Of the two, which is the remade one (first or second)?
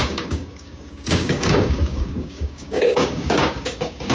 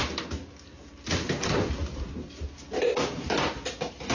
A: first